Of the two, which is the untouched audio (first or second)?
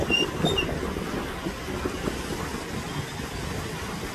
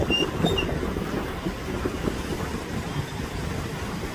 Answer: first